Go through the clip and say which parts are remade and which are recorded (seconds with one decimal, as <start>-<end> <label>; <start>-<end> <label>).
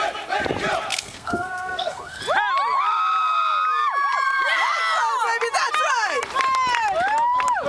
0.0-0.9 recorded; 0.9-2.2 remade; 2.2-7.7 recorded